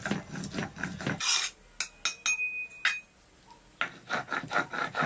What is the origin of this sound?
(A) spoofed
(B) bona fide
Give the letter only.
B